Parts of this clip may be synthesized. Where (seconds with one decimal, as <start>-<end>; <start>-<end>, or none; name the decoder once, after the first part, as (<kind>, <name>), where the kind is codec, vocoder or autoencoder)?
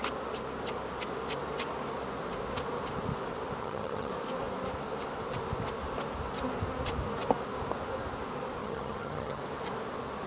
3.6-4.1 (vocoder, HiFi-GAN); 8.6-9.4